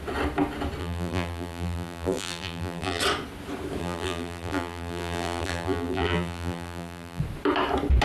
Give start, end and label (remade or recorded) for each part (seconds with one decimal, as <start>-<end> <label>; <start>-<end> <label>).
0.0-0.8 recorded; 0.8-3.0 remade; 3.0-3.8 recorded; 3.8-7.2 remade; 7.2-8.0 recorded